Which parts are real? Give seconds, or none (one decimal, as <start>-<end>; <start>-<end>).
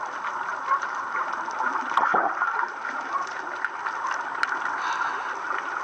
0.0-0.5; 1.3-2.1; 3.8-5.8